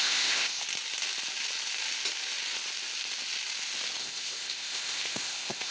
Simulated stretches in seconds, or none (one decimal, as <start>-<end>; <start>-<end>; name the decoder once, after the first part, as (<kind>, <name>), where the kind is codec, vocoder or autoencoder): 0.0-0.6 (codec, ZipCodec); 4.0-5.7